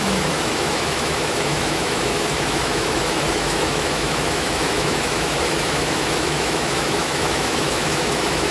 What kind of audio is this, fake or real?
fake